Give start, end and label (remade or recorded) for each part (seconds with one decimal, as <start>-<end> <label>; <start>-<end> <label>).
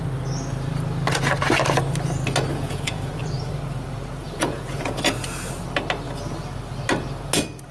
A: 0.0-2.5 recorded; 2.5-3.2 remade; 3.2-4.2 recorded; 4.2-5.0 remade; 5.0-7.7 recorded